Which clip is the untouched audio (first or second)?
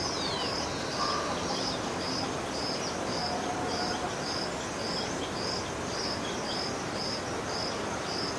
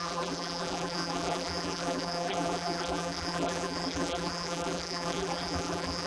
first